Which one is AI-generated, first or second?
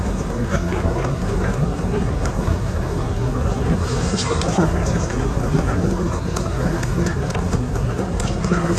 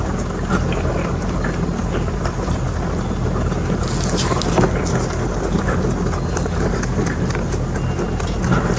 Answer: first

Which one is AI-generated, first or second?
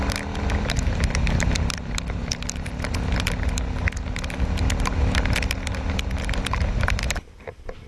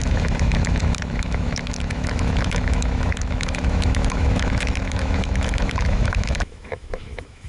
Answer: second